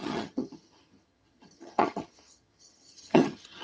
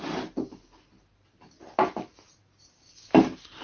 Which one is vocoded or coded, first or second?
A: first